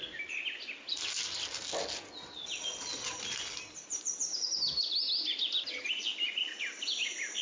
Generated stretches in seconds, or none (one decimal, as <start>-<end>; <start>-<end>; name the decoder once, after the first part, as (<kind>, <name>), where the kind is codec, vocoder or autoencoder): none